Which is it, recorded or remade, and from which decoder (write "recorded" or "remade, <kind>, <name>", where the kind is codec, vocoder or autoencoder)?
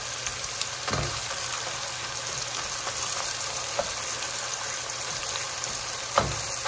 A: recorded